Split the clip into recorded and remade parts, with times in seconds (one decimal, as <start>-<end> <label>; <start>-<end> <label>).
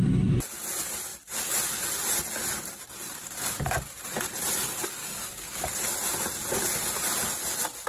0.0-5.0 recorded; 5.0-5.7 remade; 5.7-7.9 recorded